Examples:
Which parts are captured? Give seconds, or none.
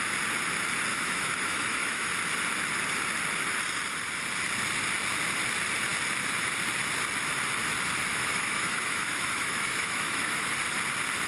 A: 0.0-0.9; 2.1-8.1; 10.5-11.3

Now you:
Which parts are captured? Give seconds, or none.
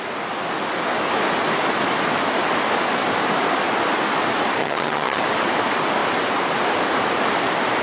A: 0.0-4.6; 5.2-7.8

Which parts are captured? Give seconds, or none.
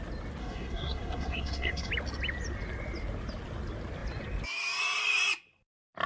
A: 0.0-0.4; 1.9-6.1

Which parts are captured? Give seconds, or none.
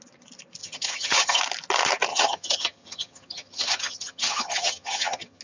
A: 0.0-0.6; 1.4-2.1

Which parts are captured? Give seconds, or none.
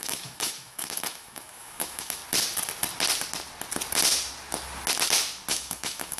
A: 2.2-5.5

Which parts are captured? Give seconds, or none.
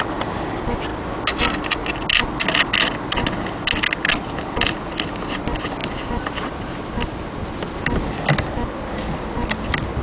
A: 0.0-10.0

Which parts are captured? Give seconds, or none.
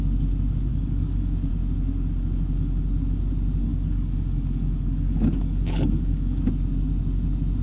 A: 0.0-0.7; 1.5-3.7; 6.5-7.6